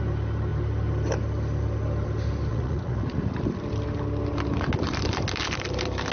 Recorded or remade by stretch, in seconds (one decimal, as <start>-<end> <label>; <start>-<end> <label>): 0.0-2.5 recorded; 2.5-3.4 remade; 3.4-6.1 recorded